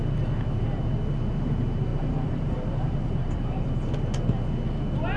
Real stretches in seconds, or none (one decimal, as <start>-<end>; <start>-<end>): 0.0-1.9; 3.8-5.2